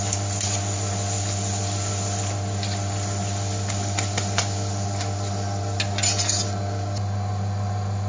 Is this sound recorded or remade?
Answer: recorded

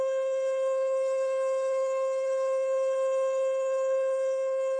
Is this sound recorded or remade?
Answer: remade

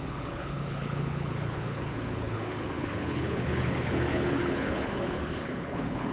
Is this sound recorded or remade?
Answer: remade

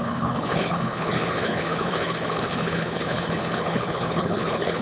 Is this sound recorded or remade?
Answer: remade